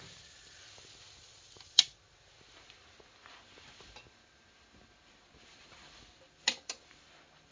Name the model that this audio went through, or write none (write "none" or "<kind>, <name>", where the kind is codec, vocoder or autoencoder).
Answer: none